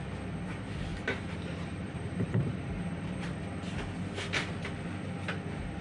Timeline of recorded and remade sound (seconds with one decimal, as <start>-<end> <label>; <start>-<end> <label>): 0.0-0.9 recorded; 0.9-3.7 remade; 3.7-5.8 recorded